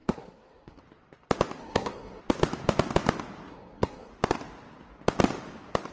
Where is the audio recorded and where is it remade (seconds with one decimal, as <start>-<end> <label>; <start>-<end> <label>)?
0.0-0.8 remade; 0.8-1.6 recorded; 1.6-2.2 remade; 2.2-3.5 recorded; 3.5-4.1 remade; 4.1-5.9 recorded